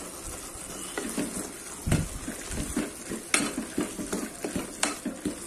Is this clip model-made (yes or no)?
no